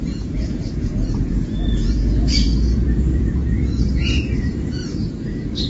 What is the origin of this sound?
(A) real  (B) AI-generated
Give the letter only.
B